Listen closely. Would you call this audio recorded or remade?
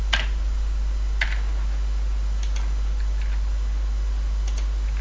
recorded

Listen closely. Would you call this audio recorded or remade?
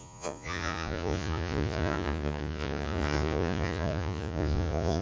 remade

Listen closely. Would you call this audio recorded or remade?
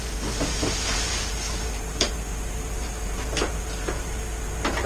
recorded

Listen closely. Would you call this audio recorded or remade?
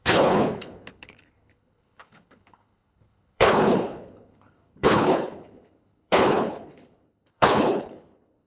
remade